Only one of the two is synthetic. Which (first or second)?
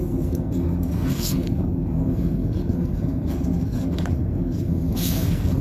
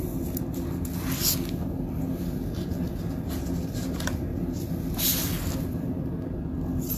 first